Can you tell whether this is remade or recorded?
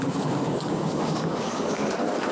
remade